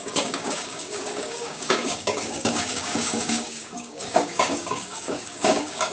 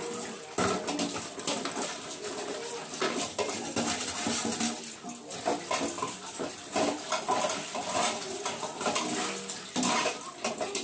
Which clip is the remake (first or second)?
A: first